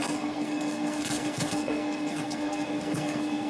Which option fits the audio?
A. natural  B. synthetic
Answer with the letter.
B